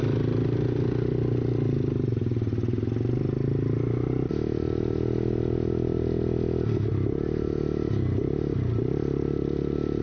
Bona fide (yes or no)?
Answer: yes